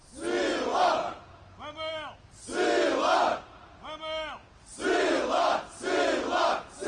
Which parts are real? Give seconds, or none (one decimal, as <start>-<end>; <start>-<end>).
0.0-4.4; 5.8-6.9